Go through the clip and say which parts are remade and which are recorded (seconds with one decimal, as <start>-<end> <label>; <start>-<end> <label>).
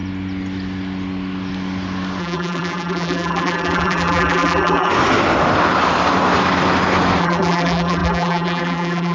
0.0-2.2 recorded; 2.2-4.9 remade; 4.9-7.2 recorded; 7.2-9.1 remade